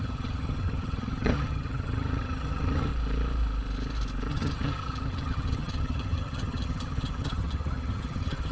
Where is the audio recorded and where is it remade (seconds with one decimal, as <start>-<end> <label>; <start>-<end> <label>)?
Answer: 0.0-2.9 remade; 2.9-4.3 recorded; 4.3-8.5 remade